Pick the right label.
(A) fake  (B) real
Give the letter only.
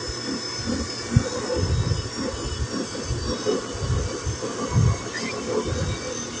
B